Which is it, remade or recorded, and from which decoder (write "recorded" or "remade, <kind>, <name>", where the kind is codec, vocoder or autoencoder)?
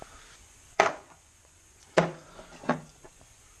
remade, vocoder, Vocos